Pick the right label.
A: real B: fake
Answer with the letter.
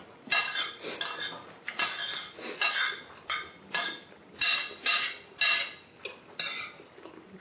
A